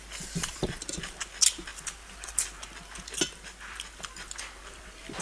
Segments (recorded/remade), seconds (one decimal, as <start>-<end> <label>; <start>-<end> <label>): 0.0-5.2 recorded